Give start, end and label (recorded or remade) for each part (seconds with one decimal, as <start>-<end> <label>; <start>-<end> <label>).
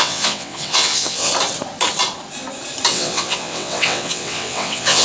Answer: 0.0-1.3 remade; 1.3-2.9 recorded; 2.9-5.0 remade